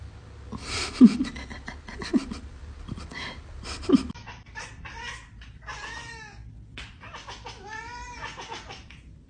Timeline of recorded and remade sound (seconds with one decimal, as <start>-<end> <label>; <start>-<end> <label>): 0.0-2.1 recorded; 2.1-7.1 remade; 7.1-9.3 recorded